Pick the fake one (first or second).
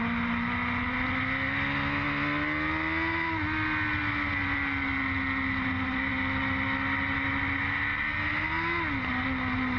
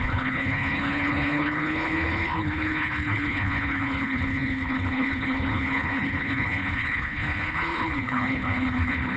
second